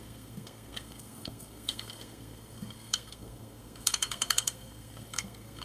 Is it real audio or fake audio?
fake